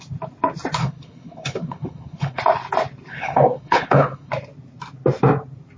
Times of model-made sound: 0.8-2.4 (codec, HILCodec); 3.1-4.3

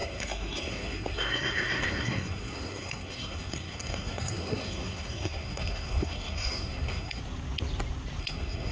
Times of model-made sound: 0.0-7.2 (codec, SNAC); 8.2-8.7

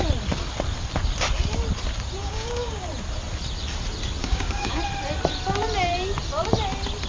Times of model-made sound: 2.2-2.8 (codec, DAC); 4.2-4.8

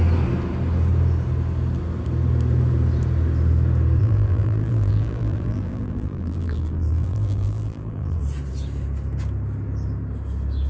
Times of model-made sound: 4.0-8.2 (vocoder, BigVGAN v2)

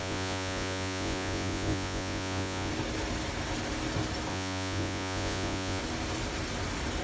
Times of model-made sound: 0.0-2.7 (vocoder, Vocos); 4.3-5.8

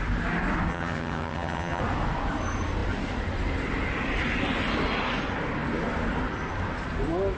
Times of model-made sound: 0.7-1.8 (vocoder, HiFi-GAN)

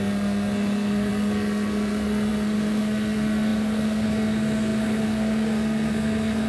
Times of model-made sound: 0.0-6.5 (codec, SNAC)

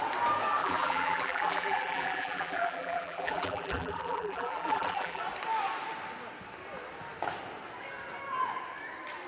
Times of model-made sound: 0.6-5.2 (vocoder, BigVGAN v2)